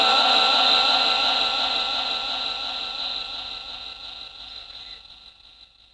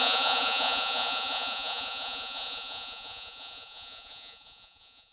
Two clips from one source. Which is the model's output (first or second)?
second